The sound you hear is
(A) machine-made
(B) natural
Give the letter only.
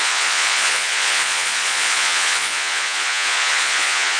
A